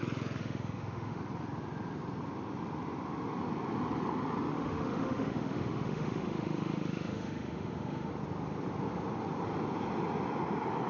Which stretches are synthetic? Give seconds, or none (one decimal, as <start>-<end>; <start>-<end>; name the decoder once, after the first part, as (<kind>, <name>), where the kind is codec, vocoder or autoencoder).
0.4-1.2 (autoencoder, DAC-VAE); 4.5-8.1